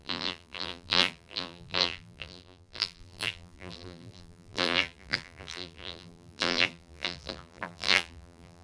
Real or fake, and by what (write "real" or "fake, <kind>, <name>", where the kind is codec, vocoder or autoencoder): fake, vocoder, BigVGAN v2